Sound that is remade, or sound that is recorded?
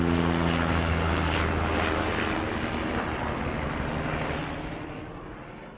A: recorded